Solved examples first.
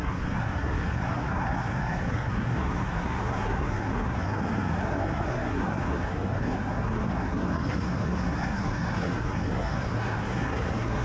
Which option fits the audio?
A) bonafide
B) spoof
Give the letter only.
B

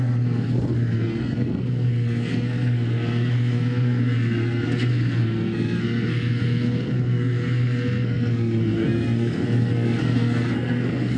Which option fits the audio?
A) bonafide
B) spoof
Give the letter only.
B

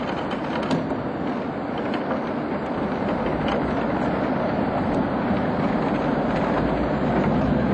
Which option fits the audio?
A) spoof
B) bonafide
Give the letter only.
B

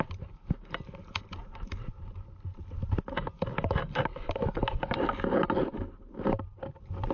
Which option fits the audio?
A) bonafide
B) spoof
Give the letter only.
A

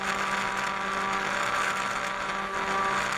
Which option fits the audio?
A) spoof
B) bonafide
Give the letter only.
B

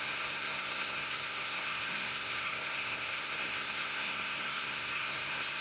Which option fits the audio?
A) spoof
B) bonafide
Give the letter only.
A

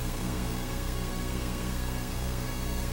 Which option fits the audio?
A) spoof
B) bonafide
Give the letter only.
A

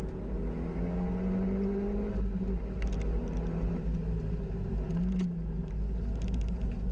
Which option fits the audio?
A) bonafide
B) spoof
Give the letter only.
A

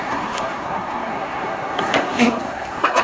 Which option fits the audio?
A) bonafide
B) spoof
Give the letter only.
B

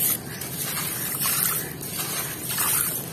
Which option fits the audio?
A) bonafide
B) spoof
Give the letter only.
A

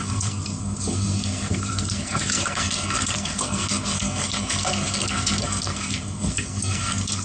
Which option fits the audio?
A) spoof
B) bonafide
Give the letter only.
A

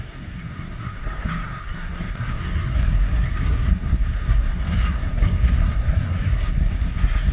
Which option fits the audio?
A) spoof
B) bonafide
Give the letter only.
A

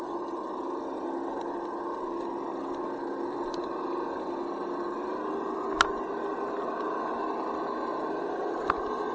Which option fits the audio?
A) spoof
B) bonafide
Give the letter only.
B